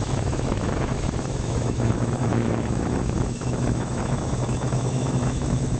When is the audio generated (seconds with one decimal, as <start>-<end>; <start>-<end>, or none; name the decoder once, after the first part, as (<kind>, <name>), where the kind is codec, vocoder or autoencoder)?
0.0-5.8 (autoencoder, DAC-VAE)